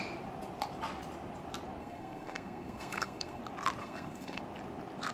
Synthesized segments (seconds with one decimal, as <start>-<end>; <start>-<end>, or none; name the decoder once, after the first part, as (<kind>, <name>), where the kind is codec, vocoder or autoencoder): 1.8-3.4 (codec, SNAC); 3.8-4.4